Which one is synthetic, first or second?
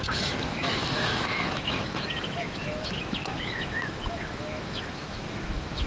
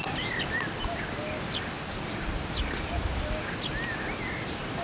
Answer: first